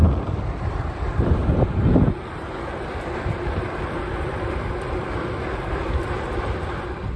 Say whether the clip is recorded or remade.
remade